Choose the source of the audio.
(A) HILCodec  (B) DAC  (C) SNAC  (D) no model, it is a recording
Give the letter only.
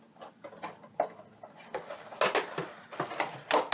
D